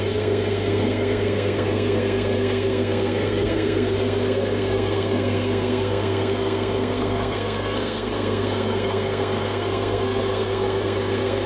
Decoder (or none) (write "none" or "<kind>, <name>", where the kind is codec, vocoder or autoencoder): codec, SNAC